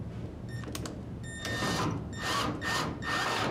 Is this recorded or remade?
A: recorded